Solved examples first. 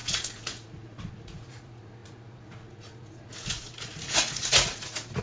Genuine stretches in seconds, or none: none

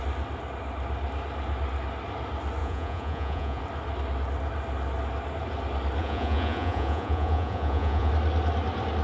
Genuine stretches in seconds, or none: 0.0-2.6; 3.6-6.0; 8.1-9.0

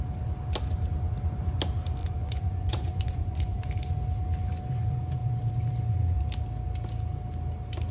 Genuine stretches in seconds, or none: 0.0-2.0; 3.6-7.9

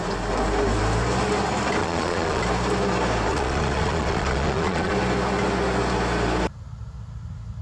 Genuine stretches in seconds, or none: 0.0-1.8; 2.4-3.3; 4.9-7.6

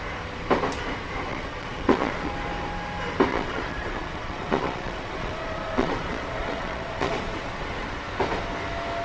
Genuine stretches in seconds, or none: 0.0-1.3; 2.3-3.3; 8.0-9.0

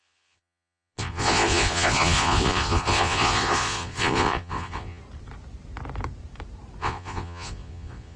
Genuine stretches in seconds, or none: 5.0-6.8